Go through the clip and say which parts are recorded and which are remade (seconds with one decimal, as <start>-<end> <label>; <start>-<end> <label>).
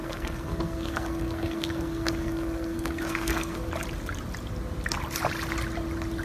0.0-3.7 remade; 3.7-6.2 recorded